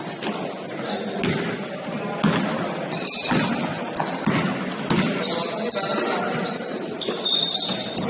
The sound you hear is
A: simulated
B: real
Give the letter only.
B